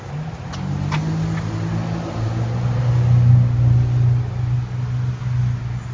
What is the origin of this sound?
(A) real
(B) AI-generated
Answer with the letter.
A